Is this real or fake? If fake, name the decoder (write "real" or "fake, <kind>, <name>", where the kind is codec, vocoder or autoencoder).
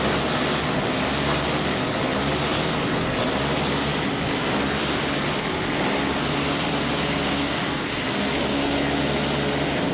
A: real